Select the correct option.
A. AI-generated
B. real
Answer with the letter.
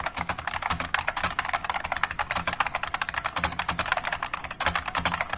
B